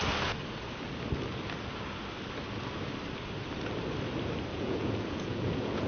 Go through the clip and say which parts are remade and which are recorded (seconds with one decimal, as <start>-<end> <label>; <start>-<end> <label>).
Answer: 0.0-4.5 recorded; 4.5-5.9 remade